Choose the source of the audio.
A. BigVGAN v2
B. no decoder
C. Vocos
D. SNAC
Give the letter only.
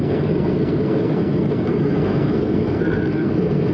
D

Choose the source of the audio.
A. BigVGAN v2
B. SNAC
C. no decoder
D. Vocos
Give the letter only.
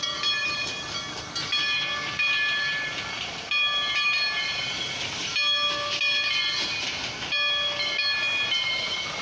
C